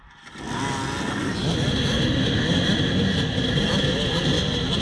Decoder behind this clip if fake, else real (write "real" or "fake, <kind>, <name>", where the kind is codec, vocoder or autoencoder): real